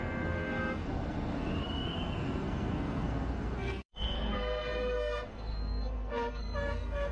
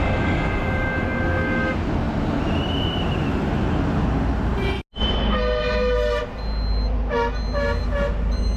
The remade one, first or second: first